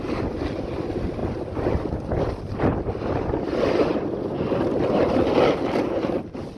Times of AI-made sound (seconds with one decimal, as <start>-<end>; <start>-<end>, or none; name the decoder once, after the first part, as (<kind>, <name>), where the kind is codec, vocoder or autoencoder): none